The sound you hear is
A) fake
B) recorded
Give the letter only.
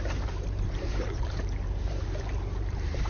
A